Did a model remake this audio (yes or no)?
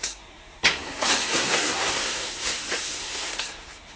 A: yes